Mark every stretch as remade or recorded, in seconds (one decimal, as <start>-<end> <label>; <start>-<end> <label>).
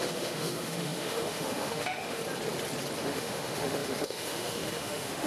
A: 0.0-2.2 remade; 2.2-3.0 recorded; 3.0-5.3 remade